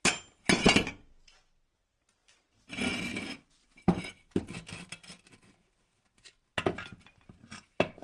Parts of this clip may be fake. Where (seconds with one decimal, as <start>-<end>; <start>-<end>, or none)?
none